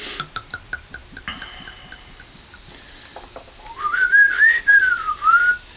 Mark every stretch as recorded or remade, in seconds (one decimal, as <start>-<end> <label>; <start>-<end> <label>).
0.0-5.8 recorded